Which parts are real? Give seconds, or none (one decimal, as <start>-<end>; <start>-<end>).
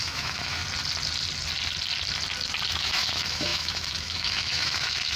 0.6-2.7